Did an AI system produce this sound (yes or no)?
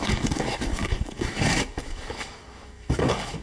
yes